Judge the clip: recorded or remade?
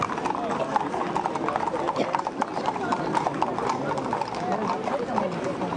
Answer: recorded